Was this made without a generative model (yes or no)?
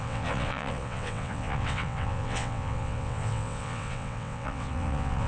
no